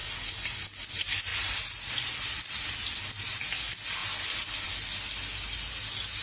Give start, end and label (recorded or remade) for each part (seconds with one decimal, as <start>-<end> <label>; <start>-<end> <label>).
0.0-6.2 recorded